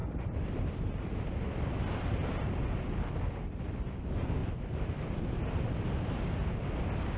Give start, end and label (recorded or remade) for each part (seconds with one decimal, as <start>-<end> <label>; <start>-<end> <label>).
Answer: 0.0-1.1 remade; 1.1-4.4 recorded; 4.4-5.0 remade; 5.0-7.2 recorded